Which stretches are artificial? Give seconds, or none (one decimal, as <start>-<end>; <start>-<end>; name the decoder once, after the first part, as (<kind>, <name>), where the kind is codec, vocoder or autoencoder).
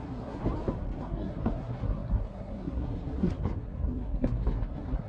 0.0-0.4 (codec, SNAC); 1.0-5.1